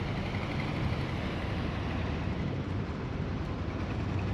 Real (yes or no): yes